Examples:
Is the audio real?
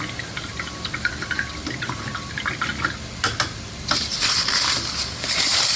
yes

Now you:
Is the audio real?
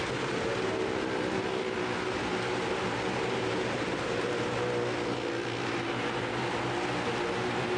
yes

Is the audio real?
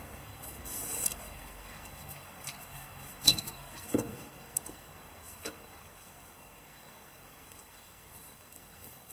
no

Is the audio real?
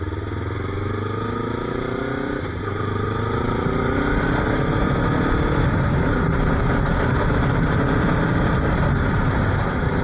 yes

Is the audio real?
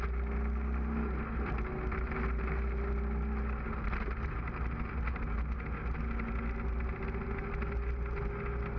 yes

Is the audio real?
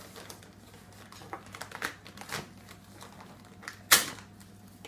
yes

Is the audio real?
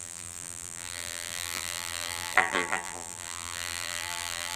no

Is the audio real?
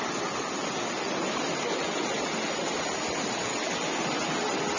yes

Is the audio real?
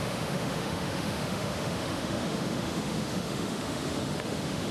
no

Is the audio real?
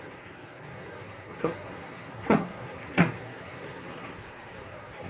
no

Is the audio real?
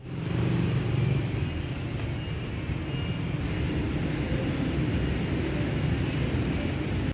yes